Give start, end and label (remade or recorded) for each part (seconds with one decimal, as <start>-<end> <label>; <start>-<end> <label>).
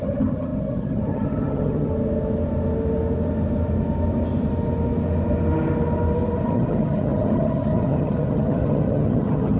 0.0-1.9 remade; 1.9-6.4 recorded; 6.4-9.6 remade